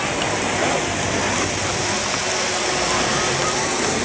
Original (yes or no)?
yes